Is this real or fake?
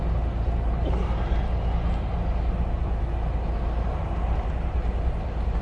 real